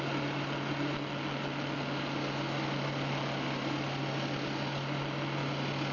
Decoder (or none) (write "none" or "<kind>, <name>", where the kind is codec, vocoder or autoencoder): none